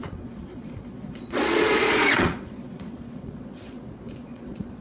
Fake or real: fake